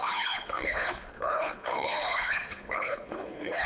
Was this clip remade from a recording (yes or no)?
yes